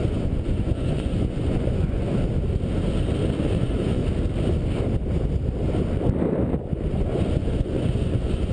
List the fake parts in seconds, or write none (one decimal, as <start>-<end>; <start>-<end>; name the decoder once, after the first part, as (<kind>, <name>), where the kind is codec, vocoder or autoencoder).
0.0-2.1 (vocoder, Vocos); 3.4-4.0; 6.9-8.5